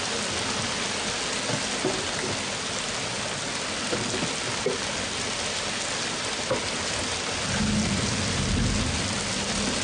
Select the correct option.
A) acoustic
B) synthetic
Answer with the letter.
A